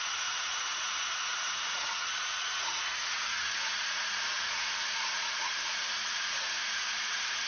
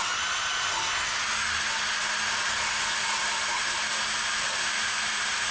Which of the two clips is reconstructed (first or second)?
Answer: first